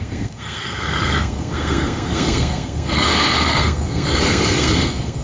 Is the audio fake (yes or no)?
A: yes